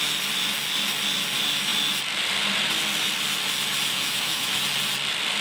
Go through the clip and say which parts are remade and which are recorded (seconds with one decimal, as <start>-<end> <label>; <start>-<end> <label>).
0.0-3.9 recorded; 3.9-4.6 remade; 4.6-5.4 recorded